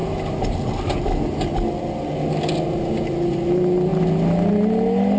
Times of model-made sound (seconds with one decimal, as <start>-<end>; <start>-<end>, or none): none